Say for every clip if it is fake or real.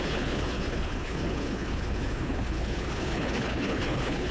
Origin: fake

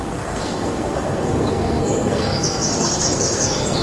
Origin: fake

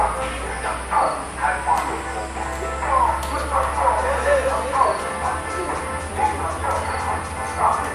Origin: real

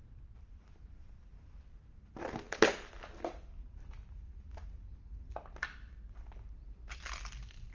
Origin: real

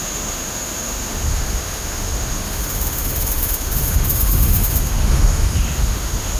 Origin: fake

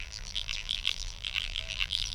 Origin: fake